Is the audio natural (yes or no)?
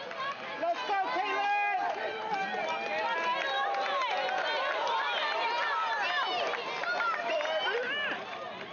yes